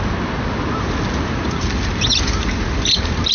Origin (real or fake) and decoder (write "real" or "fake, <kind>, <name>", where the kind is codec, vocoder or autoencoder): real